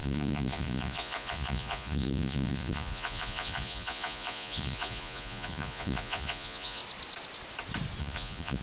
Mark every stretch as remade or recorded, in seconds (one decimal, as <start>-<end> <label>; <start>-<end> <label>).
0.0-6.8 remade; 6.8-8.0 recorded; 8.0-8.6 remade